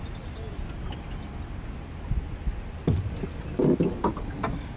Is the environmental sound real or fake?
real